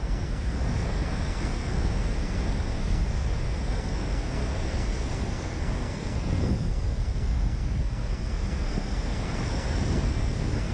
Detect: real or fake fake